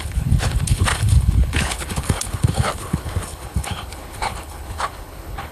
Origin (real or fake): fake